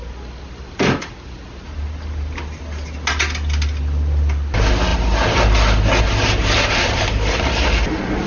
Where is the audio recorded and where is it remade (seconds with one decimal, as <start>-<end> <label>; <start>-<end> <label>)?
0.0-8.3 recorded